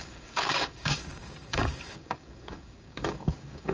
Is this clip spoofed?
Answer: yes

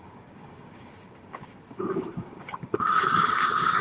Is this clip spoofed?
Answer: yes